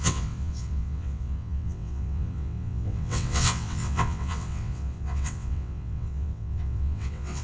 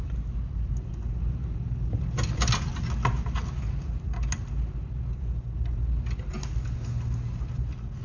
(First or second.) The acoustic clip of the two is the second